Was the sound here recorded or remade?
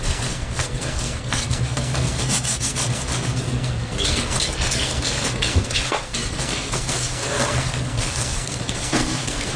remade